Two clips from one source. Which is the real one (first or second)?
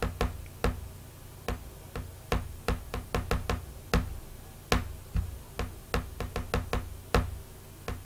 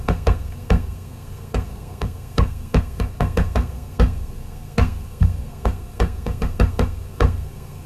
first